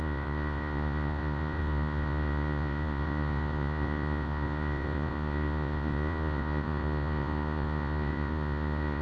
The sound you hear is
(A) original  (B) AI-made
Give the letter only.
B